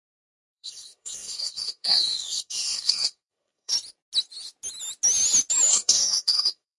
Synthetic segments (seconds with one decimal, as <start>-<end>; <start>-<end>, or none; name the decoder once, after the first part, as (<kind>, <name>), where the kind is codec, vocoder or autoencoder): 0.0-3.7 (codec, SNAC); 5.7-6.8